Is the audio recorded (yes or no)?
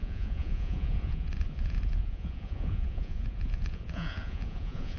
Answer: no